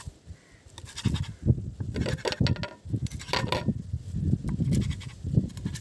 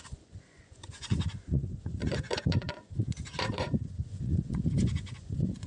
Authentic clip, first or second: first